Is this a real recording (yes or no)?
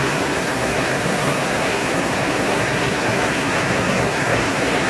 no